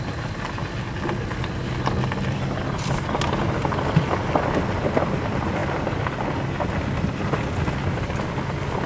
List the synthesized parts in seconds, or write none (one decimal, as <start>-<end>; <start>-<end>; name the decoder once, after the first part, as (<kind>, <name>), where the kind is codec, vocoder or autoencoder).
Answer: 5.6-6.5 (vocoder, BigVGAN v2)